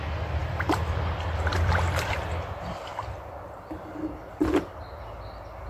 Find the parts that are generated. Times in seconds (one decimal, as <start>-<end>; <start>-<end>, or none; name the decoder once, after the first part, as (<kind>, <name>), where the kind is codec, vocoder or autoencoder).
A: 0.4-3.8 (vocoder, BigVGAN v2)